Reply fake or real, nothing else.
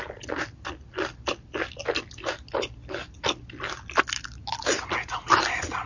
real